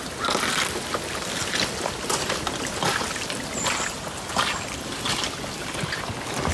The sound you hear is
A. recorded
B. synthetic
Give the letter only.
A